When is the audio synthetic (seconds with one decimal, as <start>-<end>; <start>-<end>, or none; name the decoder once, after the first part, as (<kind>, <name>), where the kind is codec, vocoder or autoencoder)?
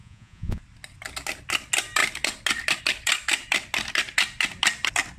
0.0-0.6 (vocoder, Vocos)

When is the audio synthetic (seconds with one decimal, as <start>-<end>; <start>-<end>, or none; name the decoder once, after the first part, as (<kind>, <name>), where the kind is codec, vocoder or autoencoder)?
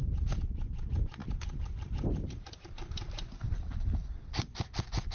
none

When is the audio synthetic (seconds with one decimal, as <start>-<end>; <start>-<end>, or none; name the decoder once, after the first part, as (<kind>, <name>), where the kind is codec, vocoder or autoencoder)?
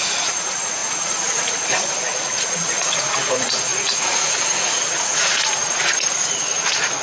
0.0-7.0 (vocoder, Vocos)